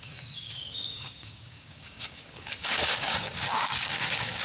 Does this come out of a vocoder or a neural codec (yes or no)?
yes